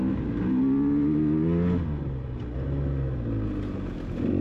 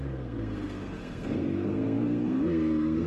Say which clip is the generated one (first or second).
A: second